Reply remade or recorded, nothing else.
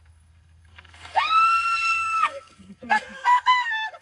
remade